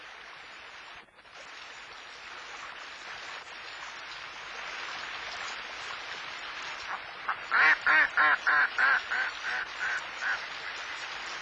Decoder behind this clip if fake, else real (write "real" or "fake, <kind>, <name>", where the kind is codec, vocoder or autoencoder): real